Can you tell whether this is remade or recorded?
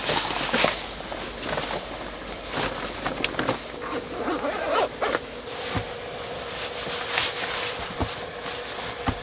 recorded